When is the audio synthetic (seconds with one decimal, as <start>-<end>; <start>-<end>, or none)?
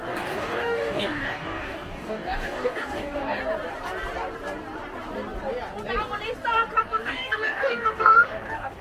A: 0.0-3.4; 7.0-8.8